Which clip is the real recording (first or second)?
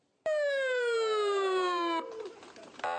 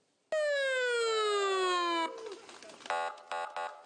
second